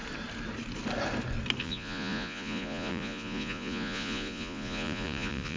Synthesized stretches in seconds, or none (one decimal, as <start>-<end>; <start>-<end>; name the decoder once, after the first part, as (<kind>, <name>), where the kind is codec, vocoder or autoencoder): 1.6-5.6 (vocoder, Vocos)